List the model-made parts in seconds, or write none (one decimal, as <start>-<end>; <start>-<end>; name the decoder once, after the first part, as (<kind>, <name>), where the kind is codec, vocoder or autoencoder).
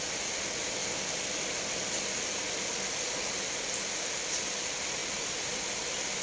none